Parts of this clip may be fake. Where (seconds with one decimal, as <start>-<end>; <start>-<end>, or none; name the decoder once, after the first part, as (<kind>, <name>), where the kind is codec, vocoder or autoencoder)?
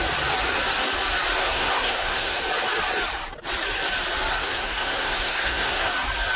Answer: 1.4-2.4 (codec, SNAC); 4.3-5.9